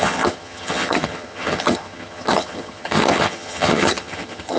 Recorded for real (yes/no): no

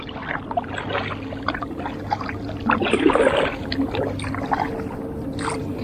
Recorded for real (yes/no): no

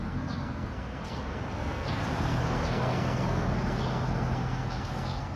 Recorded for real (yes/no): no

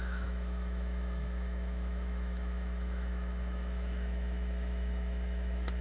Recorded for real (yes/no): no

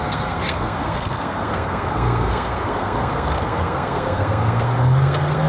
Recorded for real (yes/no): no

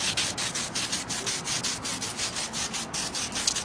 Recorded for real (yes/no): yes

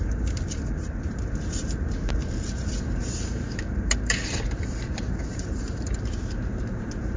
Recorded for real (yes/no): no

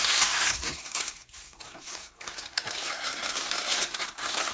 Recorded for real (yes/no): no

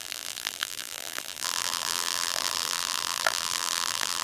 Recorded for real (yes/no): no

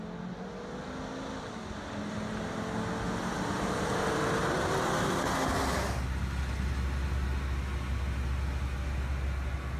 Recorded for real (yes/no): yes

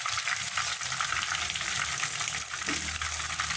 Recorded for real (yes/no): yes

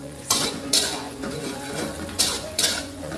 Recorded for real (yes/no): no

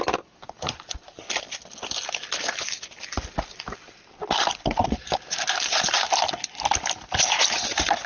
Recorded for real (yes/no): yes